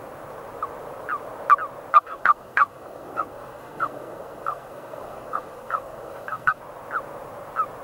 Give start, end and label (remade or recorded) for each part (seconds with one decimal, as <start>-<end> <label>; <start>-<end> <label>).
0.0-1.9 recorded; 1.9-6.6 remade; 6.6-7.8 recorded